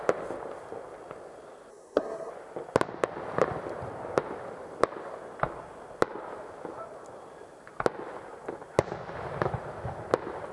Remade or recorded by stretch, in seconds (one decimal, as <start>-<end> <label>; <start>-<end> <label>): 0.0-1.7 recorded; 1.7-2.3 remade; 2.3-10.5 recorded